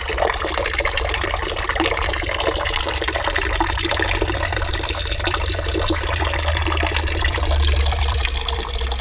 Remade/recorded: remade